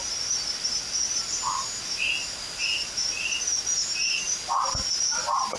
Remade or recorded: recorded